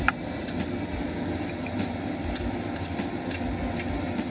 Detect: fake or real real